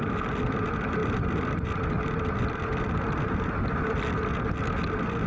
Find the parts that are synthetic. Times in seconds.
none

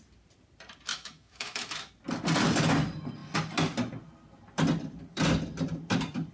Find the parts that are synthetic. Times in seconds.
0.9-1.9 (autoencoder, DAC-VAE)